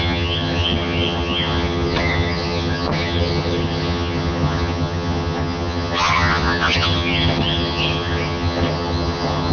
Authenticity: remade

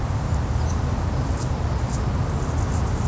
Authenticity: recorded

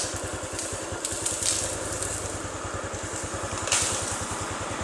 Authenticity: recorded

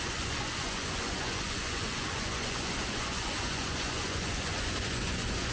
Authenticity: remade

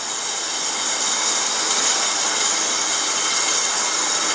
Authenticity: recorded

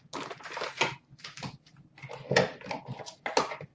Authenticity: recorded